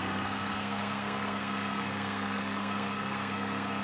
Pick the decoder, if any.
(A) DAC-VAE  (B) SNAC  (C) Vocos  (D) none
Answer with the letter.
B